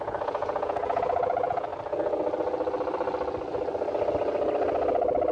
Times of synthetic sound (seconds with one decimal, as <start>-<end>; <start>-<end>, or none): 0.0-1.7